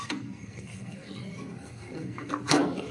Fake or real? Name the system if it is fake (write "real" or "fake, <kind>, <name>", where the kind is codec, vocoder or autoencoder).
fake, codec, SNAC